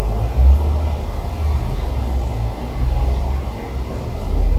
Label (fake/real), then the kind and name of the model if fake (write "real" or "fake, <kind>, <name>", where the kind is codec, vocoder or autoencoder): real